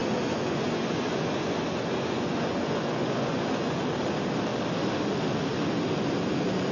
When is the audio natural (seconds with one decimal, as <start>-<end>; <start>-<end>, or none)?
3.8-6.7